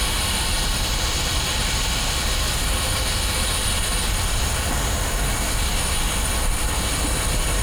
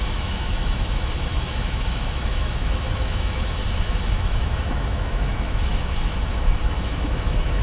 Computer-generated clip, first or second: second